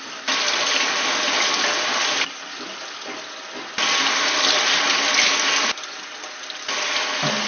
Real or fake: real